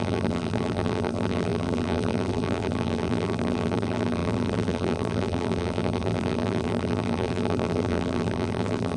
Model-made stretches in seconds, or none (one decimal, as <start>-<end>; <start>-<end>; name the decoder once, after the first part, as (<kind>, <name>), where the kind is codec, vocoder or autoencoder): 0.0-9.0 (vocoder, BigVGAN v2)